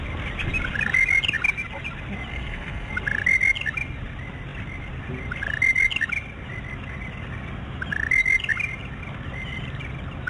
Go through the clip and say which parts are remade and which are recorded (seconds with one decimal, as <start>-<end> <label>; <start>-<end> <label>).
0.0-2.3 recorded; 2.3-2.9 remade; 2.9-10.3 recorded